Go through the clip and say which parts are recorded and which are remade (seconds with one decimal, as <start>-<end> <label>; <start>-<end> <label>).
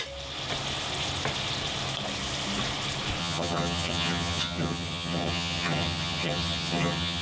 0.0-3.2 recorded; 3.2-7.2 remade